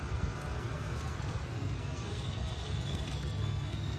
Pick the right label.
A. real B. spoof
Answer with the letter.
B